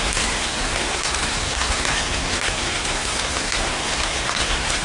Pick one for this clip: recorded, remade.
remade